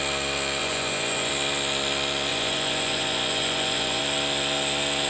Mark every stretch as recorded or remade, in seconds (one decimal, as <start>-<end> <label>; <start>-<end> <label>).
0.0-0.6 recorded; 0.6-1.3 remade; 1.3-2.3 recorded; 2.3-4.0 remade; 4.0-5.1 recorded